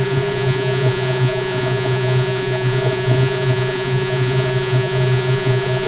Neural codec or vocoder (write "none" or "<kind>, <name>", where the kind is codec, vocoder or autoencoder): vocoder, Vocos